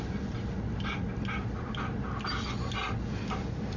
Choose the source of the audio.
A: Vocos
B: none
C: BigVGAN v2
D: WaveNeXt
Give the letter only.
B